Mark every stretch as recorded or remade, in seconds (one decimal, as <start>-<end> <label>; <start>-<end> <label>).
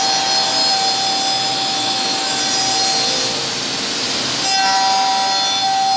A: 0.0-1.5 recorded; 1.5-2.4 remade; 2.4-6.0 recorded